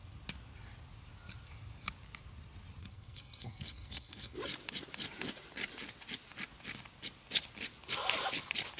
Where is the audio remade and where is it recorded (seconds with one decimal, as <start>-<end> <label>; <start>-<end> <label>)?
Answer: 0.0-2.8 recorded; 2.8-4.4 remade; 4.4-8.8 recorded